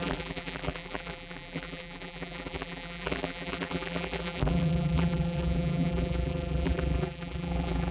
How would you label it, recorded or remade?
remade